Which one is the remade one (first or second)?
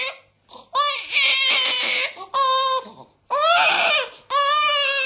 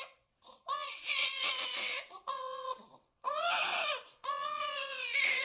second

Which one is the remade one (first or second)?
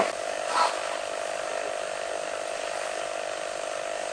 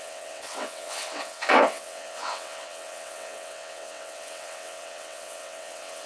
second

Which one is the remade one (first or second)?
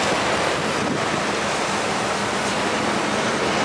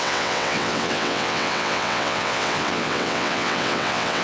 second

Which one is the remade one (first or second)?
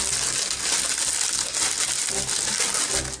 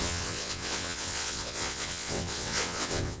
second